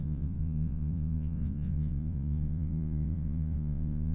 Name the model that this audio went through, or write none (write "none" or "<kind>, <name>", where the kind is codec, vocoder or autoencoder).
vocoder, Vocos